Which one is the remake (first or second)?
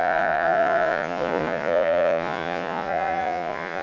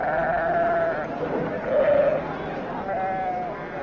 first